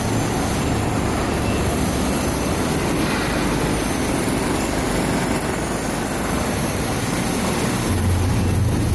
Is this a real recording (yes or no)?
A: yes